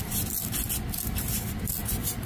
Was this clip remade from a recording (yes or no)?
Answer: no